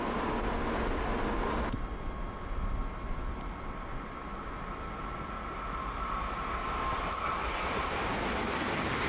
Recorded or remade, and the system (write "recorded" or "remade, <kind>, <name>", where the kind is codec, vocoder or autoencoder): recorded